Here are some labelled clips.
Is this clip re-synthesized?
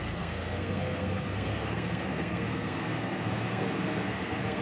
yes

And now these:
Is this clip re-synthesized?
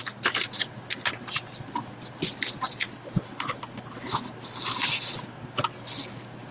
no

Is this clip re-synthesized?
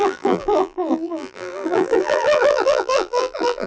yes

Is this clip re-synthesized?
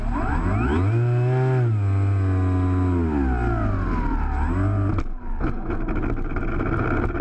no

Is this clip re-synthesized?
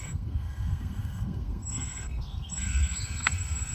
yes